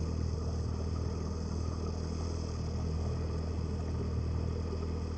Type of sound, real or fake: real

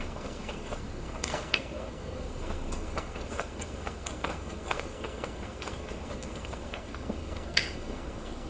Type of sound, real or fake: fake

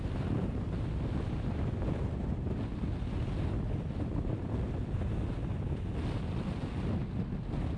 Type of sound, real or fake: real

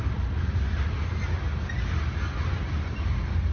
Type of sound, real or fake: real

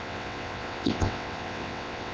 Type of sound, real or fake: fake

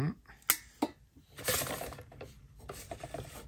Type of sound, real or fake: real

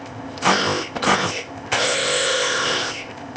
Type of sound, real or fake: fake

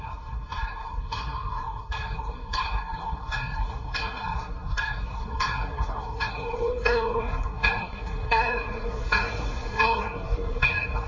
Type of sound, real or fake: fake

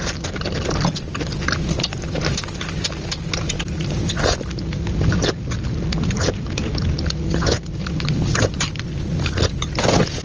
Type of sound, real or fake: real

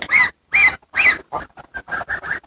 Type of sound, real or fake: real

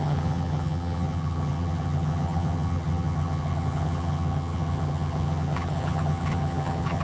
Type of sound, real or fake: fake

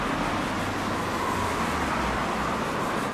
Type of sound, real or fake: real